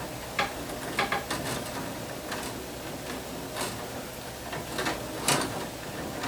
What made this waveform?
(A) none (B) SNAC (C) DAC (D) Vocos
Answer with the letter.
A